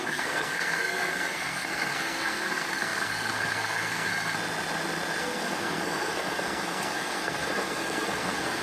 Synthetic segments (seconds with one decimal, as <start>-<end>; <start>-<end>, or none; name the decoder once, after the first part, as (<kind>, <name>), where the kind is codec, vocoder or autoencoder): 0.0-4.1 (codec, SNAC); 5.2-8.6